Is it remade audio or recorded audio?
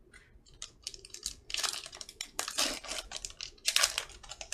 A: remade